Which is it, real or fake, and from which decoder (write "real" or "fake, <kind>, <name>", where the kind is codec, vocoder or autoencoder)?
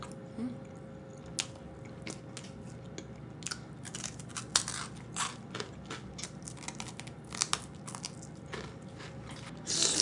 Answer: real